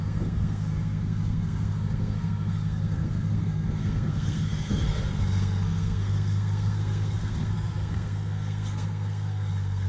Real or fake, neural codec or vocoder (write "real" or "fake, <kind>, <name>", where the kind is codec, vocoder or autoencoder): fake, codec, SNAC